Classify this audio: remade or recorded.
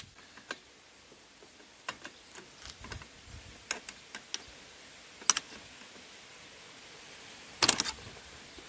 recorded